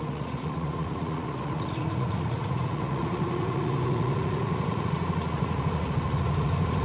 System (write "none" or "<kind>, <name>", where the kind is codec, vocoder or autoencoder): vocoder, Vocos